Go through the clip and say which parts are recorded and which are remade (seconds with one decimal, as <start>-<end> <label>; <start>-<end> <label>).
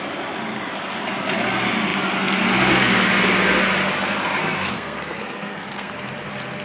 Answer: 0.0-4.4 recorded; 4.4-5.9 remade; 5.9-6.6 recorded